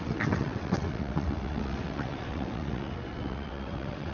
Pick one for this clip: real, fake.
fake